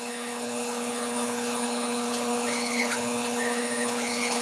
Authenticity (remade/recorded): remade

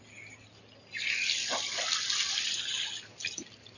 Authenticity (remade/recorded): recorded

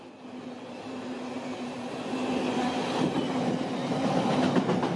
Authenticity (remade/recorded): recorded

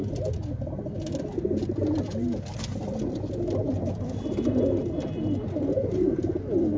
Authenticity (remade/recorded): recorded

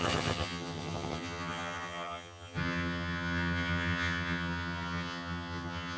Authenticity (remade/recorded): remade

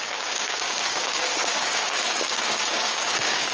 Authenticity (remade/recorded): remade